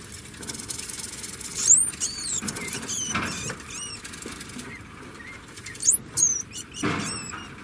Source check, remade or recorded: recorded